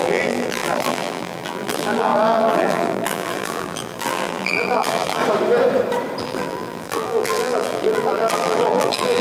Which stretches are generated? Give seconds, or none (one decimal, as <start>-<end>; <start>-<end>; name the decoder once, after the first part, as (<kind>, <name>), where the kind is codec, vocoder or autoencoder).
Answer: 0.0-5.2 (vocoder, BigVGAN v2); 6.2-9.2